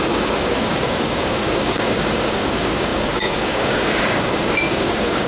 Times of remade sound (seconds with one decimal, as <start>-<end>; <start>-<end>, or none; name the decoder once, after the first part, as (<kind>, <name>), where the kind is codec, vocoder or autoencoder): 0.0-5.3 (codec, DAC)